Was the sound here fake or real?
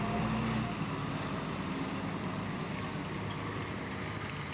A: real